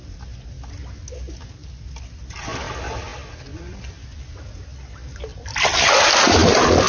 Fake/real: real